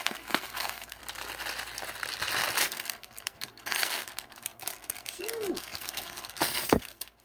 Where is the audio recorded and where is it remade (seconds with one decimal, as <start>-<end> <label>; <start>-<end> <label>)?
0.0-1.0 remade; 1.0-2.6 recorded; 2.6-7.2 remade